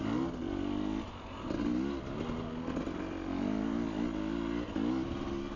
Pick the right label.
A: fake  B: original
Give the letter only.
B